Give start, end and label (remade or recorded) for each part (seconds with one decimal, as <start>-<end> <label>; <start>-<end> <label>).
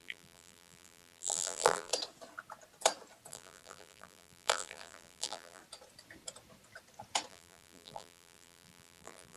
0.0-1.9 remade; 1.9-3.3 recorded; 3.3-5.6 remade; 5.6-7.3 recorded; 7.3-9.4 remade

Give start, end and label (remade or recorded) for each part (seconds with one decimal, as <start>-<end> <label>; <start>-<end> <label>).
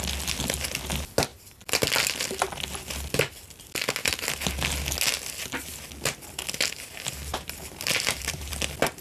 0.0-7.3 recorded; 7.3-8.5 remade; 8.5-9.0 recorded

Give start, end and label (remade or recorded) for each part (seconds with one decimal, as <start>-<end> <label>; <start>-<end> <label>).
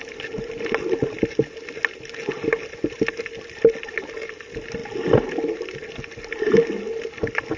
0.0-7.6 recorded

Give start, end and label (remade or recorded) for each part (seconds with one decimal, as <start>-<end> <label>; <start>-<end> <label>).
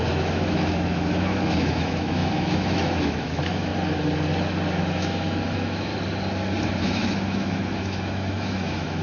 0.0-3.7 remade; 3.7-4.8 recorded; 4.8-5.9 remade; 5.9-6.8 recorded; 6.8-9.0 remade